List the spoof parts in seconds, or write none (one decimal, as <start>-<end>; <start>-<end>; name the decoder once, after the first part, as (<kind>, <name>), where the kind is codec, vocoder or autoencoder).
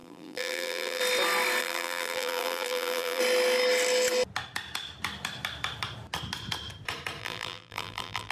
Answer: 0.0-1.0 (vocoder, BigVGAN v2); 1.6-3.2; 7.2-8.3